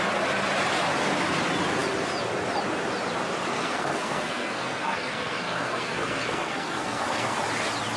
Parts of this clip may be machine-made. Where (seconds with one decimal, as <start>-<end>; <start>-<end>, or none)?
3.5-7.4